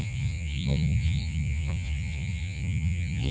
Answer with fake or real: fake